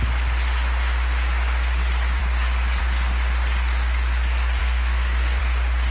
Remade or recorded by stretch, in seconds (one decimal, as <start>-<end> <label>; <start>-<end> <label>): 0.0-4.6 recorded; 4.6-5.4 remade; 5.4-5.9 recorded